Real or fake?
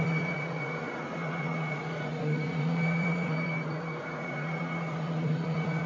fake